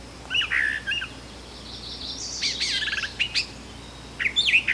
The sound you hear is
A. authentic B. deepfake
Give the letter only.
A